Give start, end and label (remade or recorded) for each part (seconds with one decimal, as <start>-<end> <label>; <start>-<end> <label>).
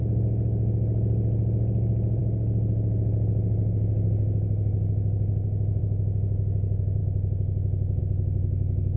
0.0-9.0 recorded